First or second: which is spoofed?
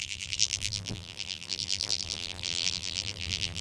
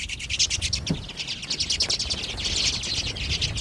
first